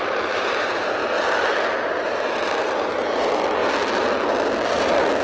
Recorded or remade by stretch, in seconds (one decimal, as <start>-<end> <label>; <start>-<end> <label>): 0.0-5.2 recorded